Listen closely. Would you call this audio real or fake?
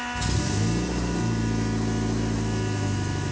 real